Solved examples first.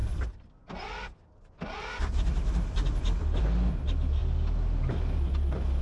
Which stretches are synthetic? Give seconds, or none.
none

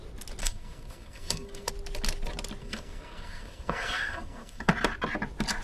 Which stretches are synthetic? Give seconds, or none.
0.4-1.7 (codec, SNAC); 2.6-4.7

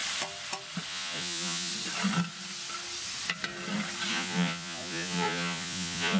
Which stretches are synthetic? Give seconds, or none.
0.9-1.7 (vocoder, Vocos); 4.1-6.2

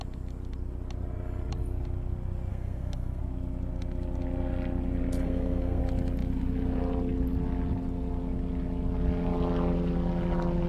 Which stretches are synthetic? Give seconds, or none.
2.5-3.2 (codec, SNAC); 5.2-5.8